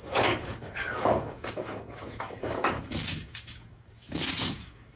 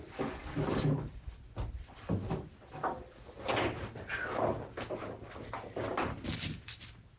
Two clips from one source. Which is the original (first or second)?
second